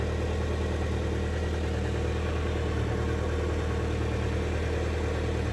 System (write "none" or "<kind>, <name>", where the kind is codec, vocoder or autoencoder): none